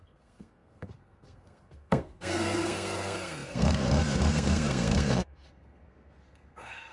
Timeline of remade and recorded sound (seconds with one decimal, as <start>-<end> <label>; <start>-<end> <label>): 0.0-6.9 remade